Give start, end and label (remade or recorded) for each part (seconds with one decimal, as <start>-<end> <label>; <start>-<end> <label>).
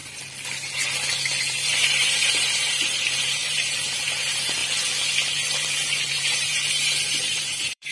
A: 0.0-1.4 recorded; 1.4-4.6 remade; 4.6-6.1 recorded; 6.1-7.9 remade